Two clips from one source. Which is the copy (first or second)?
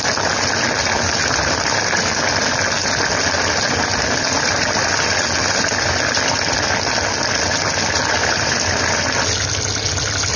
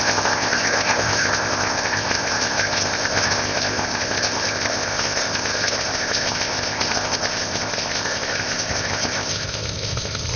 second